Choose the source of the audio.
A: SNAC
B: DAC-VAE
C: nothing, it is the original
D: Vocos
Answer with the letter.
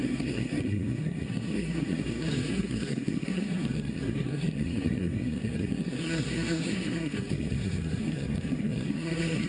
A